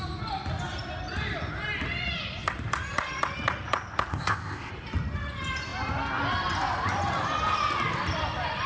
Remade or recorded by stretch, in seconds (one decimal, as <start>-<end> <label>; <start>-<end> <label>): 0.0-4.1 recorded; 4.1-4.7 remade; 4.7-8.7 recorded